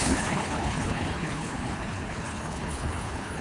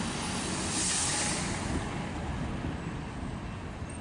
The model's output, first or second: first